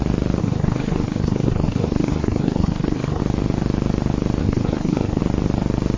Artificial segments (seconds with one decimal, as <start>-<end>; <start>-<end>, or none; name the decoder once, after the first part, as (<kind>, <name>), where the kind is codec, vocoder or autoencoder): 0.4-3.2 (codec, SNAC); 4.4-5.2